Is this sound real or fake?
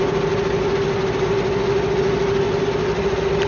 real